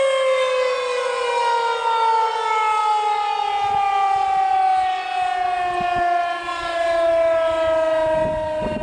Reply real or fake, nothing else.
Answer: real